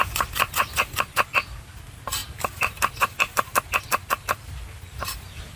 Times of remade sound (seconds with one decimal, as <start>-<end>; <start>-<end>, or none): none